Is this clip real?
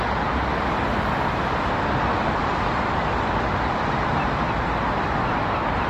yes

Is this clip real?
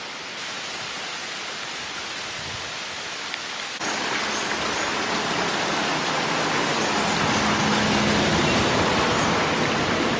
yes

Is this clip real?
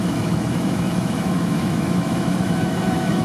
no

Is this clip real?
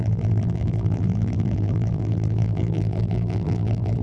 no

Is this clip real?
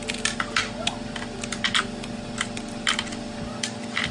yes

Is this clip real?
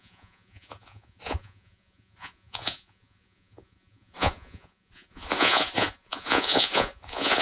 no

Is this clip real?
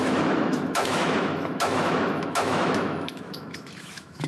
no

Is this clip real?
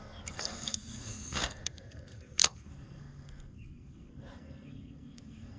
no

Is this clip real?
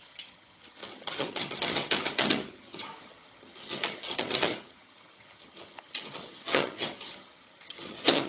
no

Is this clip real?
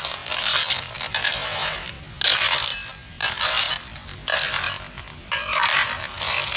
yes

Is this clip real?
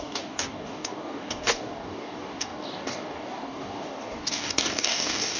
no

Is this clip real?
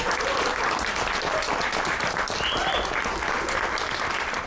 yes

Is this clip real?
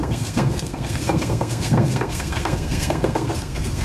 no